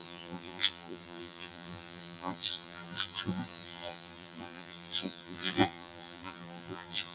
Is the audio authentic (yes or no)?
no